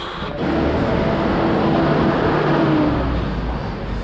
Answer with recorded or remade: recorded